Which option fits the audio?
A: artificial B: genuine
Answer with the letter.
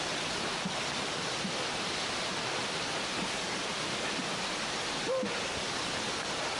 B